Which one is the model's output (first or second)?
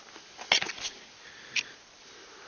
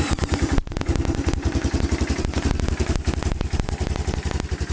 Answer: second